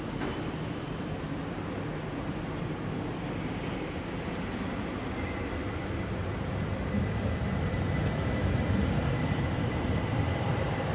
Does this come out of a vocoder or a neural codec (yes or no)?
no